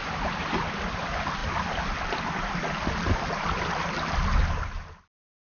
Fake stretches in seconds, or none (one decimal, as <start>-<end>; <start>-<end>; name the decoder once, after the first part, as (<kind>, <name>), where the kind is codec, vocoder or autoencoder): none